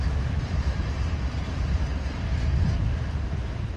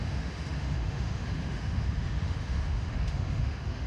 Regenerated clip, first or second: second